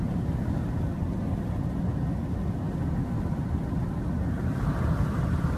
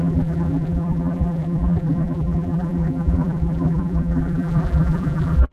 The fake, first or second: second